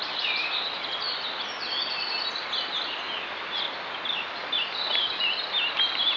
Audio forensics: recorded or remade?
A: recorded